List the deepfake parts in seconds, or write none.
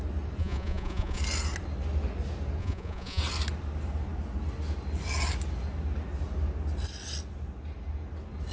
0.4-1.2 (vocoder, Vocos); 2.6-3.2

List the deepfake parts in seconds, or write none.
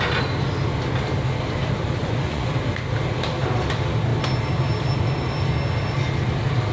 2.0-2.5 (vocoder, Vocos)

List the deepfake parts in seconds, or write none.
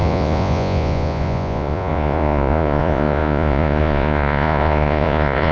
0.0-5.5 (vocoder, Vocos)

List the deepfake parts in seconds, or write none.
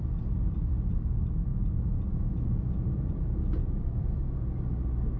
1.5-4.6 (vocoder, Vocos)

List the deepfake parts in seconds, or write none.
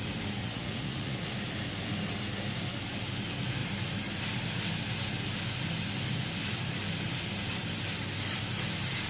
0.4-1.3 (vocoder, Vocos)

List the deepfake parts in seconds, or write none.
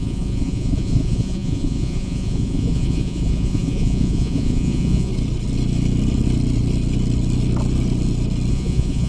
0.0-5.1 (vocoder, Vocos); 8.5-9.1